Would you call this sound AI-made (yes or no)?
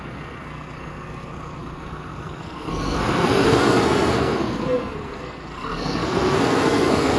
yes